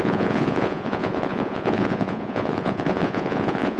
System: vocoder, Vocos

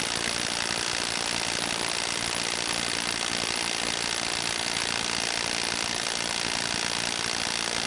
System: none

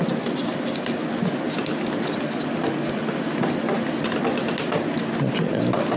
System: none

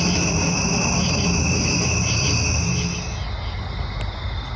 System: none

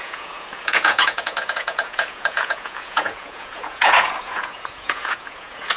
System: vocoder, Vocos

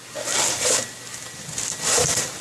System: none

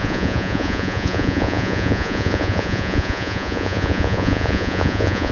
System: vocoder, Vocos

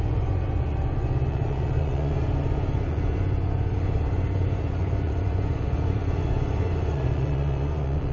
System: vocoder, Vocos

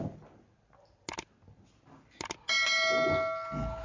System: none